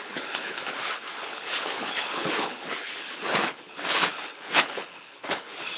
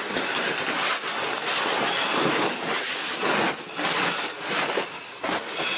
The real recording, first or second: second